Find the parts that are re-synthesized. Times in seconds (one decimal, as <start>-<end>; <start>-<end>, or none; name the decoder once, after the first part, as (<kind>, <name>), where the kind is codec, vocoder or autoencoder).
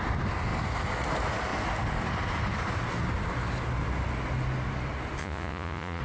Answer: 5.2-6.0 (vocoder, Vocos)